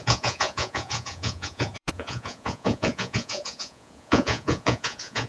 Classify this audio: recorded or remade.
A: remade